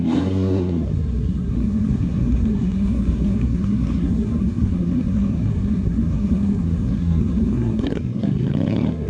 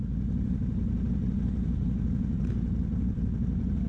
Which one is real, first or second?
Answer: second